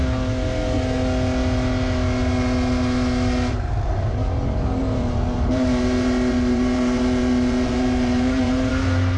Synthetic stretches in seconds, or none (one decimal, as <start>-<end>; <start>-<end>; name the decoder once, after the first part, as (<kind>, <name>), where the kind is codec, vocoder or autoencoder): 4.8-8.7 (vocoder, BigVGAN v2)